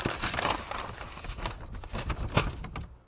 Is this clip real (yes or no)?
yes